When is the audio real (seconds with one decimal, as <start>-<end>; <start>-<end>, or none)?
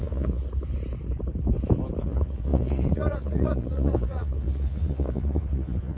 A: 0.4-2.0